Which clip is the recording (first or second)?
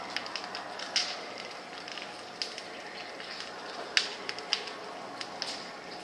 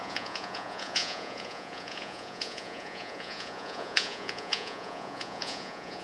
first